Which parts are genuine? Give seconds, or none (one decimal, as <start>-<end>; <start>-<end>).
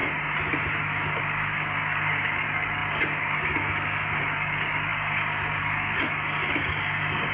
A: 0.0-0.8